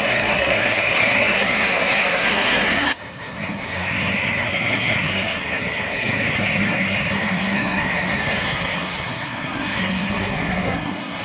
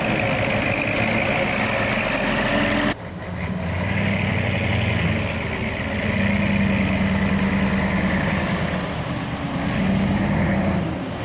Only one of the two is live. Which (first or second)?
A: second